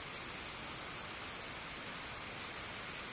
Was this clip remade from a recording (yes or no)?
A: no